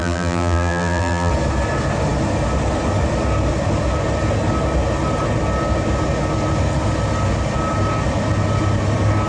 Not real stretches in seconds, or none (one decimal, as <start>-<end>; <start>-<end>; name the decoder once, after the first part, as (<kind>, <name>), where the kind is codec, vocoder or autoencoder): 0.0-1.3 (vocoder, BigVGAN v2)

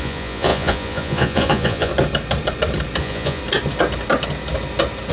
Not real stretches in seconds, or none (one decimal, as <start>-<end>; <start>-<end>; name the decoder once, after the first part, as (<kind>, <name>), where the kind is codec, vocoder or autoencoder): 0.0-1.9 (vocoder, Vocos); 3.0-3.4